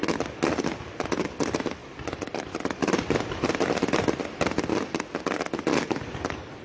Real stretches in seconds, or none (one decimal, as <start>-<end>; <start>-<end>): 0.0-6.6